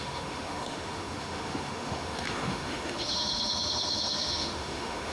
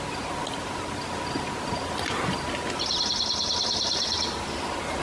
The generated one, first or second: first